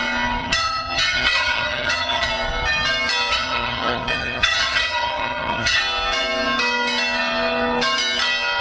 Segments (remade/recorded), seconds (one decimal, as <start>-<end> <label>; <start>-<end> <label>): 0.0-0.4 recorded; 0.4-2.3 remade; 2.3-3.3 recorded; 3.3-5.8 remade; 5.8-8.6 recorded